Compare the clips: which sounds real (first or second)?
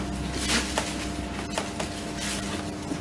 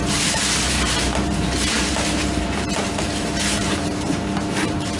first